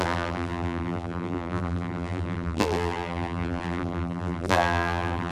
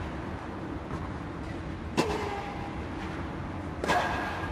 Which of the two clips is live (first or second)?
second